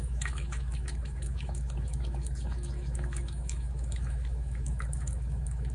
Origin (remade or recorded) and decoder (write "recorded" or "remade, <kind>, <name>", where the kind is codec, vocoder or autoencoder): remade, autoencoder, DAC-VAE